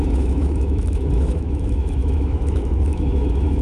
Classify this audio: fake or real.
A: fake